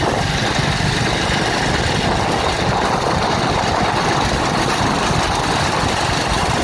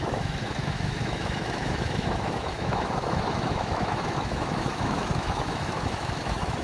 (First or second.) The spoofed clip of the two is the second